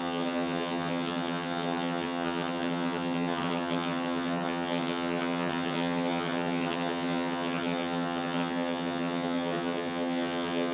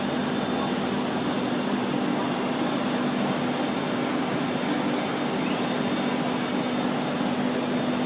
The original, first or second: second